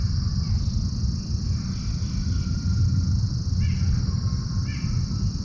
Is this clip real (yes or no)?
yes